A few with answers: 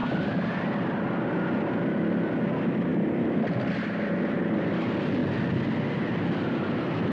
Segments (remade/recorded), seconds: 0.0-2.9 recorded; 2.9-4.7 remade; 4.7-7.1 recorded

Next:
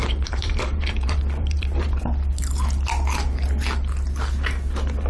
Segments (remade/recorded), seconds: 0.0-2.1 remade; 2.1-5.1 recorded

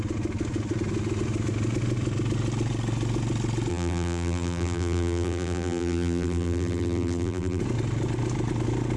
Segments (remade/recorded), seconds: 0.0-3.7 recorded; 3.7-7.6 remade; 7.6-9.0 recorded